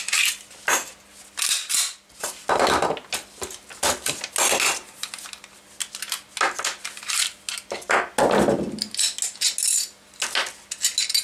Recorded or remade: recorded